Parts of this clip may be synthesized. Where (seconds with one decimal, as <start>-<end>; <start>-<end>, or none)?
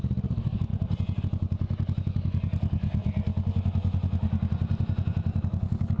0.0-0.7; 1.2-3.0; 5.4-6.0